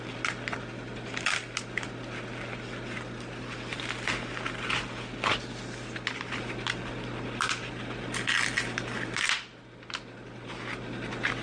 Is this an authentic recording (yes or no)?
yes